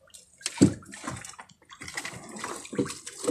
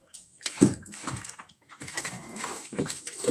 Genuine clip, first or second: first